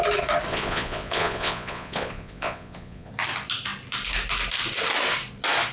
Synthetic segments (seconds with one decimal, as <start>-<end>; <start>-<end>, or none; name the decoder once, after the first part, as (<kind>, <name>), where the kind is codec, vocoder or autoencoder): 0.5-3.1 (vocoder, Vocos)